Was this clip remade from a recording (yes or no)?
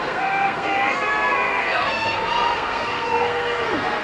yes